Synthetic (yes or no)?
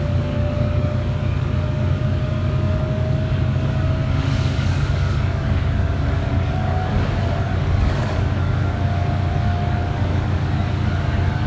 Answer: yes